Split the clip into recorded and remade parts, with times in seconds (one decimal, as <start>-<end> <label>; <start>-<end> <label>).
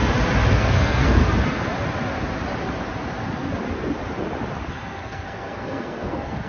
0.0-0.5 recorded; 0.5-1.2 remade; 1.2-4.7 recorded; 4.7-6.5 remade